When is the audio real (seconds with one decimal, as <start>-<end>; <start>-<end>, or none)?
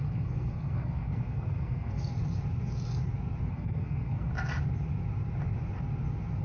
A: 2.1-3.5; 4.3-6.4